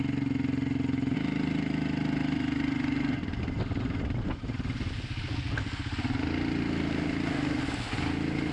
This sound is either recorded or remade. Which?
recorded